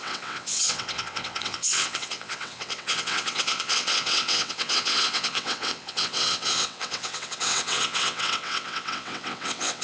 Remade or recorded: remade